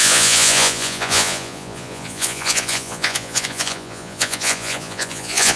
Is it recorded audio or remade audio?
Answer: remade